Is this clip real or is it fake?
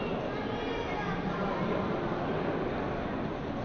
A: real